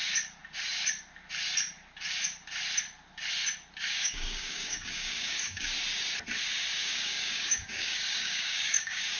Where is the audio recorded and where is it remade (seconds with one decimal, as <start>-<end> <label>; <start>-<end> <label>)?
0.0-3.9 recorded; 3.9-5.7 remade; 5.7-6.8 recorded; 6.8-9.2 remade